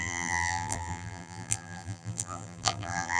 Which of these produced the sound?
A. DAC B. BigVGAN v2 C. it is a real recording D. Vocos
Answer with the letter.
B